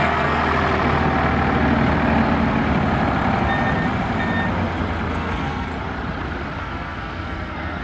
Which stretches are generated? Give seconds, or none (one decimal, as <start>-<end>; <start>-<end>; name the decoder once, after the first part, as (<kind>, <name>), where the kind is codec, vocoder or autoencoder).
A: 0.0-0.4 (codec, SNAC); 5.1-5.7; 6.6-7.8